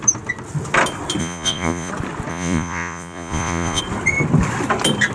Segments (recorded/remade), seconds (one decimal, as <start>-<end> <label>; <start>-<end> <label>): 0.0-1.2 recorded; 1.2-1.9 remade; 1.9-2.3 recorded; 2.3-3.8 remade; 3.8-5.1 recorded